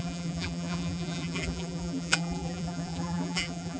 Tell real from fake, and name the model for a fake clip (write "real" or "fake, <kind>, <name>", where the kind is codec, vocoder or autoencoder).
fake, vocoder, BigVGAN v2